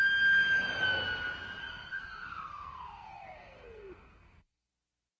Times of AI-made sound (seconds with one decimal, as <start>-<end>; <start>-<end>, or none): 1.6-4.7

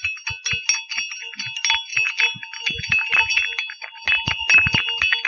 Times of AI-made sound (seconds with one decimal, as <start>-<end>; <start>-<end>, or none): none

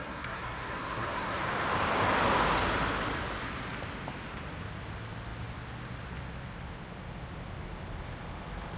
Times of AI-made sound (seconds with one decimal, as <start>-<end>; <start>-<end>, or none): 0.0-1.4

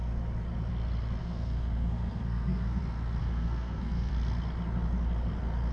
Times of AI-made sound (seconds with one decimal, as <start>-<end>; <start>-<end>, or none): 1.2-2.8; 3.2-4.1

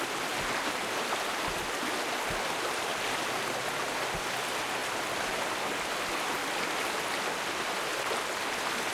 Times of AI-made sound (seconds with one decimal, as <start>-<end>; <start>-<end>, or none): none

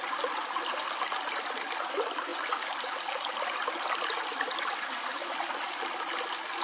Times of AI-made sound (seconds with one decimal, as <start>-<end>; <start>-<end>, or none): none

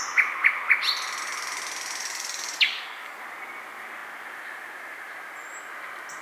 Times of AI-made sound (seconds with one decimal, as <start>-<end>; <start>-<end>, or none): 2.0-3.2

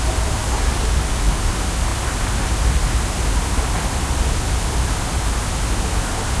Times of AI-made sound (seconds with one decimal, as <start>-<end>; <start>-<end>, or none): 0.4-1.5